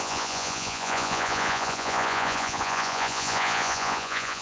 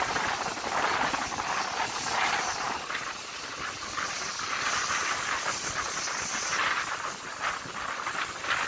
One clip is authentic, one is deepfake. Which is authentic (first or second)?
second